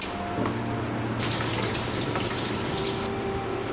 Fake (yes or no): no